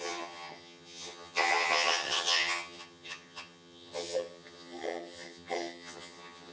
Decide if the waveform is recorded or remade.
remade